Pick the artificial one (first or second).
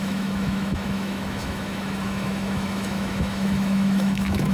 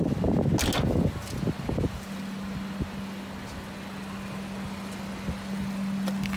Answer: first